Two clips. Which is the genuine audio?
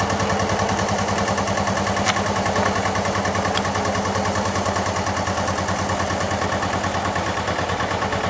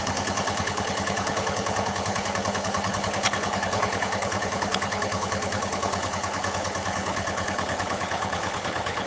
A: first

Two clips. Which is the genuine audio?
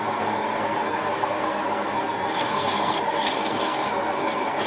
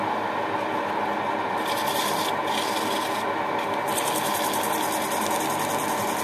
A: second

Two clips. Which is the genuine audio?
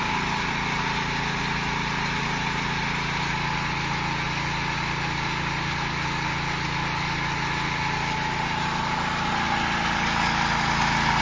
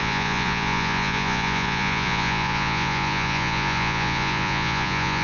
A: first